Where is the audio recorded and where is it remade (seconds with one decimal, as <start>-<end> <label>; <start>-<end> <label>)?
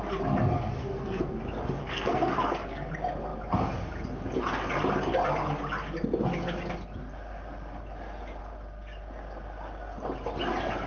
0.0-0.8 recorded; 0.8-1.4 remade; 1.4-1.8 recorded; 1.8-2.9 remade; 2.9-10.9 recorded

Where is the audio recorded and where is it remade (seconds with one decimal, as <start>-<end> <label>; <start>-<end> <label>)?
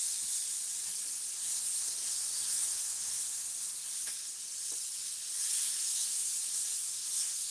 0.0-1.1 recorded; 1.1-4.4 remade; 4.4-5.6 recorded; 5.6-7.5 remade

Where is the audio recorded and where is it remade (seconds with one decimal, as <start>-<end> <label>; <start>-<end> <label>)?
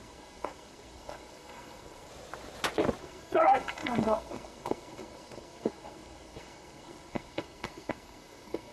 0.0-2.1 remade; 2.1-3.0 recorded; 3.0-8.7 remade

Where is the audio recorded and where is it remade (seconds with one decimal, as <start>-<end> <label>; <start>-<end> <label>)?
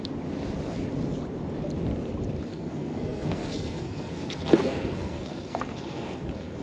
0.0-2.5 recorded; 2.5-6.6 remade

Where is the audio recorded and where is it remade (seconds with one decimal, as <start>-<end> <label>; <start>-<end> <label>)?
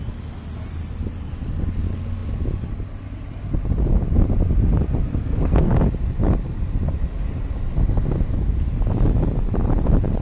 0.0-5.1 recorded; 5.1-5.7 remade; 5.7-10.2 recorded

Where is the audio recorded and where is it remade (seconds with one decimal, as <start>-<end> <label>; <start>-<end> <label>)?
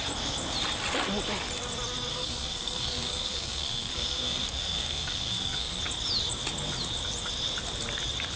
0.0-2.1 recorded; 2.1-5.8 remade; 5.8-8.4 recorded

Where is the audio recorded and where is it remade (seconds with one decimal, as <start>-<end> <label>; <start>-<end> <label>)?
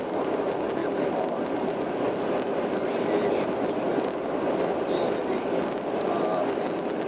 0.0-7.1 recorded